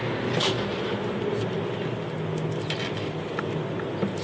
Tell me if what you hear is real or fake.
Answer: real